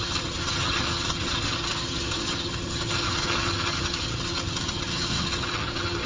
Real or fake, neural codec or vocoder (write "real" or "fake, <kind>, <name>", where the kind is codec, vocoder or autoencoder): fake, vocoder, HiFi-GAN